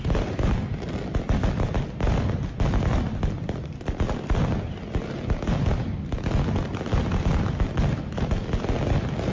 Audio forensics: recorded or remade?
recorded